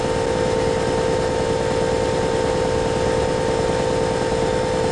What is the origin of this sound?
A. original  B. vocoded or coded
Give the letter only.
A